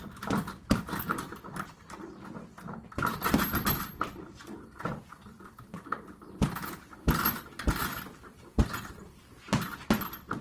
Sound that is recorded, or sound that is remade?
recorded